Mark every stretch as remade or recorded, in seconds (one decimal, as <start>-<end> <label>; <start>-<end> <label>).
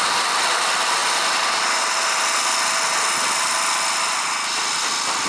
0.0-5.3 recorded